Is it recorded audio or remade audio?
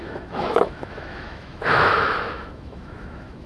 remade